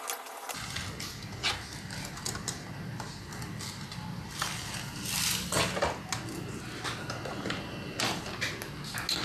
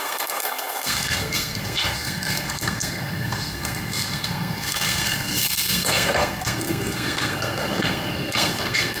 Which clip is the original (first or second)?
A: first